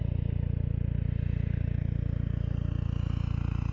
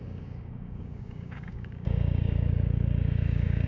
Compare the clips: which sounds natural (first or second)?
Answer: first